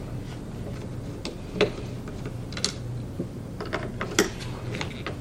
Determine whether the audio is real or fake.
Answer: real